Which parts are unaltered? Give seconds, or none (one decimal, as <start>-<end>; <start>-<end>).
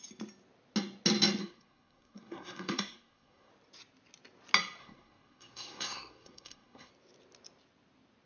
0.0-1.4; 3.5-4.8; 6.9-8.3